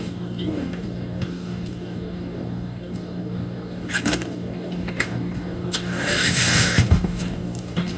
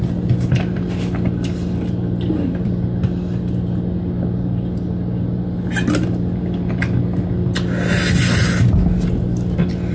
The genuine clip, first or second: second